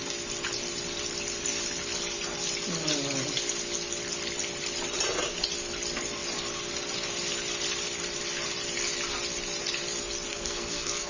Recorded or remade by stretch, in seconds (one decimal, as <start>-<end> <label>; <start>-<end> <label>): 0.0-10.3 recorded; 10.3-11.1 remade